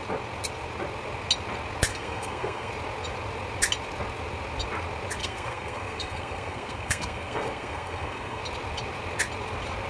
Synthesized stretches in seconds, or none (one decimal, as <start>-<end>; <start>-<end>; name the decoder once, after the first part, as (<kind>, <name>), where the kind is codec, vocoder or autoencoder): 1.9-2.7 (codec, SNAC); 5.2-8.4